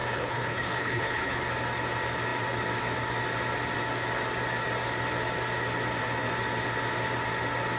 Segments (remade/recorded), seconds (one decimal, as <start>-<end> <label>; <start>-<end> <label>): 0.0-1.4 remade; 1.4-7.8 recorded